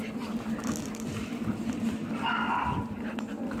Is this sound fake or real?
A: fake